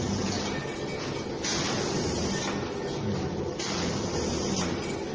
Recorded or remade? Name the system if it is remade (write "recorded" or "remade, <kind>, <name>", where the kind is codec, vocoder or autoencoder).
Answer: recorded